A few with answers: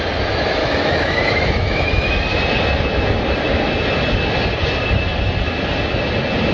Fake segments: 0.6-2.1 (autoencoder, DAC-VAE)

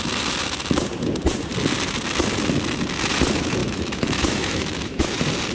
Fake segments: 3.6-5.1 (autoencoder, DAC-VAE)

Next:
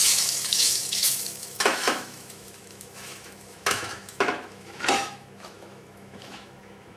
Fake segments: 0.0-7.0 (autoencoder, DAC-VAE)

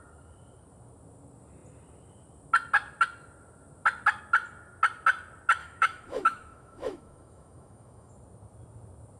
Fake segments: 5.6-8.1 (autoencoder, DAC-VAE)